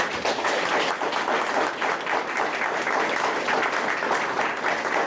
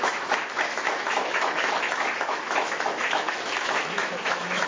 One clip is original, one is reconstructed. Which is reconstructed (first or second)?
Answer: second